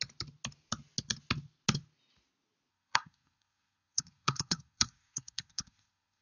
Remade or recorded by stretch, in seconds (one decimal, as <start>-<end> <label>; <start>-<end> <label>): 0.0-2.7 recorded; 2.7-6.2 remade